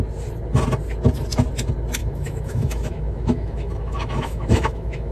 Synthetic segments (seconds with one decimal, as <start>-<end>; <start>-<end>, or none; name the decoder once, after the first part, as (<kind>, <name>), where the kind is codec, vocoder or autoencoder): 2.0-5.1 (autoencoder, DAC-VAE)